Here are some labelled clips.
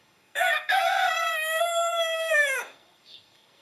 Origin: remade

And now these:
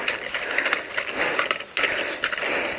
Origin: recorded